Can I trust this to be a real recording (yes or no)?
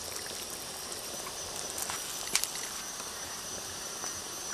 yes